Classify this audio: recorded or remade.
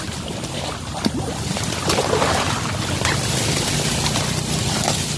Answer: remade